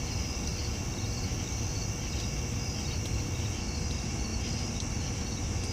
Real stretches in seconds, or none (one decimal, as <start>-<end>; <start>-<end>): 0.0-0.5; 1.3-5.7

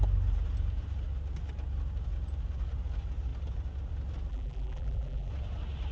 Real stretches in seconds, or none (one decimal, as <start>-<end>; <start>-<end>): 0.0-4.3; 5.3-5.9

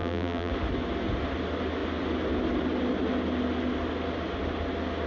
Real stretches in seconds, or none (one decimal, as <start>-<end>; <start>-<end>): 0.5-5.1

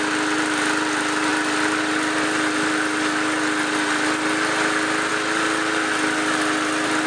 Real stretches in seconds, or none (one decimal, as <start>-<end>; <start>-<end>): 0.0-7.1

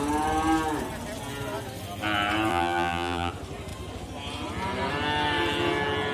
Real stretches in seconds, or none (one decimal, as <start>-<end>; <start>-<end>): 0.0-2.5; 3.3-6.1